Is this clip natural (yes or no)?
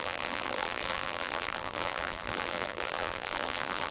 no